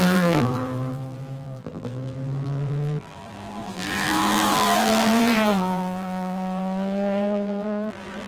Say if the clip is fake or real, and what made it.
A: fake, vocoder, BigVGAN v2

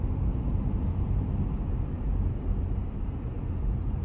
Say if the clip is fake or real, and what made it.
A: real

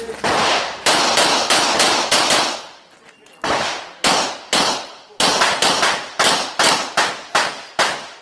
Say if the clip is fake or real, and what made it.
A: real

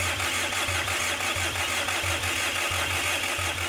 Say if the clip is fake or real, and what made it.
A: real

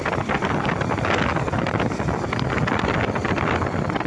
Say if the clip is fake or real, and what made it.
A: real